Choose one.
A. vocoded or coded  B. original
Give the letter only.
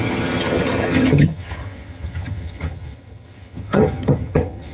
A